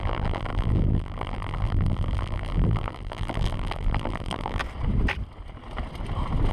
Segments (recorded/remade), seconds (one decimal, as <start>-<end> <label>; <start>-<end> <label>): 0.0-4.6 remade; 4.6-6.5 recorded